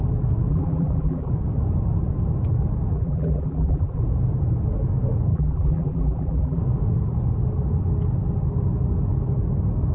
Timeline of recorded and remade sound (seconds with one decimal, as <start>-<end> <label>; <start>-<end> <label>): 0.0-0.5 recorded; 0.5-1.3 remade; 1.3-2.9 recorded; 2.9-4.0 remade; 4.0-5.3 recorded; 5.3-6.6 remade; 6.6-9.9 recorded